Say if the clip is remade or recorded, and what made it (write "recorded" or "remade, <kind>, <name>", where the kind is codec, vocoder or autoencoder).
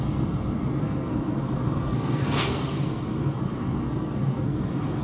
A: remade, codec, SNAC